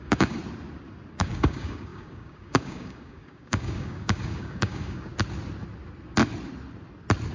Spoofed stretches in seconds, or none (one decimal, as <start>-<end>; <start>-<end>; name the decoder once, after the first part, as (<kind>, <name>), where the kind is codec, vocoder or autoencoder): 0.0-0.4 (codec, DAC); 1.1-5.1